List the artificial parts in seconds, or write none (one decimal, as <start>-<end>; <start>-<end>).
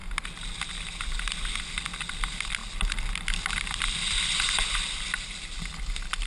2.1-6.3